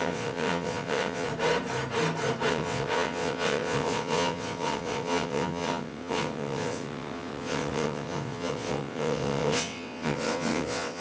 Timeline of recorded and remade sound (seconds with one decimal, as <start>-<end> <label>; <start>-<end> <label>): 0.0-1.3 remade; 1.3-2.5 recorded; 2.5-11.0 remade